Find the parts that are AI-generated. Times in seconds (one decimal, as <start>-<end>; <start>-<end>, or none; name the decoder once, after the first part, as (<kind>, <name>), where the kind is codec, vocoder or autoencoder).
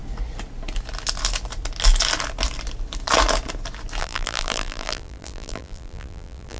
4.0-6.6 (vocoder, BigVGAN v2)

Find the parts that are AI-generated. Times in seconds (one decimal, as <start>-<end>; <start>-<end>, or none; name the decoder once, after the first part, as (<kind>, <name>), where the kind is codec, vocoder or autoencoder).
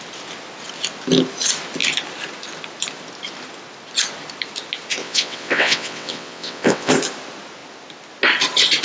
5.0-6.9 (vocoder, WaveNeXt)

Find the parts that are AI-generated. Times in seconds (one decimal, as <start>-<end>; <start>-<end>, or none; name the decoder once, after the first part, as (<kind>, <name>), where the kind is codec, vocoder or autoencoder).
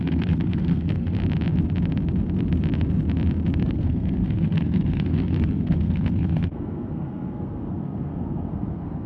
0.0-1.2 (codec, SNAC); 3.6-9.1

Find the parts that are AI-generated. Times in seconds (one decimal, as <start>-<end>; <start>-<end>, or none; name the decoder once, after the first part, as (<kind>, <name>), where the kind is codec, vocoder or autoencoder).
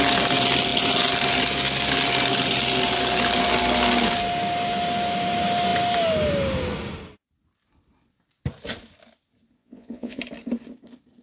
9.6-10.2 (vocoder, Vocos)